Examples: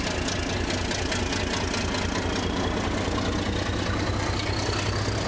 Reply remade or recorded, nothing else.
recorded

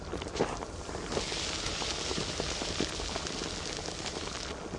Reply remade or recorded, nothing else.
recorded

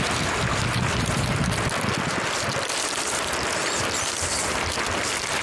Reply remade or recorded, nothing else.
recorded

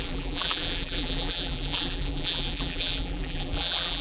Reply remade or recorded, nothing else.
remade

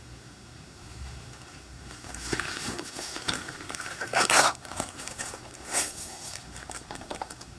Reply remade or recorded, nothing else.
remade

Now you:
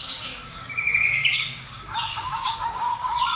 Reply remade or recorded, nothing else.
remade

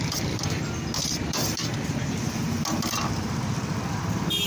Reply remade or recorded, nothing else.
recorded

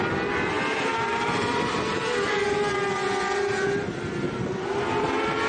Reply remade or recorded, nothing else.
recorded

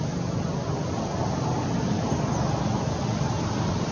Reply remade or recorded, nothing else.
recorded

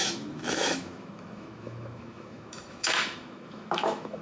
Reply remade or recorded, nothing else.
remade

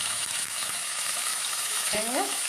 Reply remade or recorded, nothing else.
remade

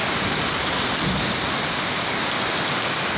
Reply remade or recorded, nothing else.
recorded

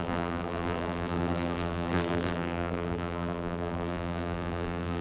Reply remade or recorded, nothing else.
remade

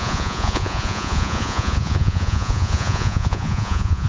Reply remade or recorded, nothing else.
remade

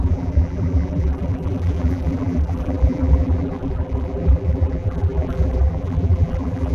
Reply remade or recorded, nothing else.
remade